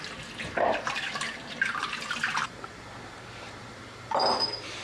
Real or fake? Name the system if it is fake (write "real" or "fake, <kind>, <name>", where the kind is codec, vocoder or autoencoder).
fake, vocoder, BigVGAN v2